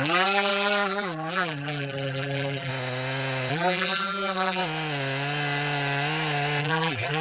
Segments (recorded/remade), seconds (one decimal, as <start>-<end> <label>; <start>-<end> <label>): 0.0-2.7 remade; 2.7-3.5 recorded; 3.5-4.6 remade; 4.6-6.6 recorded; 6.6-7.2 remade